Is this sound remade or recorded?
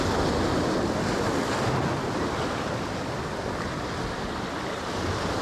recorded